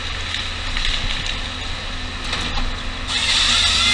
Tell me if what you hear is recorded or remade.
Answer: recorded